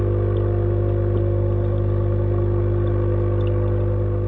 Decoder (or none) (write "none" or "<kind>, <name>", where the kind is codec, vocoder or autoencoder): none